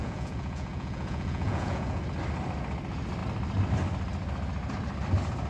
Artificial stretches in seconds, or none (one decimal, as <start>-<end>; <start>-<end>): 0.0-2.0